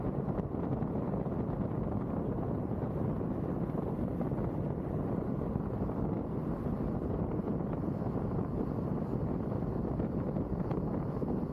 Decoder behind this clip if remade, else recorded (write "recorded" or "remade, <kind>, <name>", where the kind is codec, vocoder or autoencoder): recorded